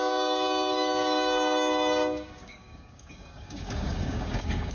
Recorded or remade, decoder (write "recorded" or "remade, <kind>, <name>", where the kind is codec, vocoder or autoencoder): remade, codec, DAC